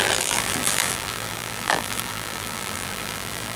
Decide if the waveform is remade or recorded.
remade